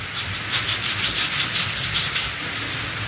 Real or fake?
real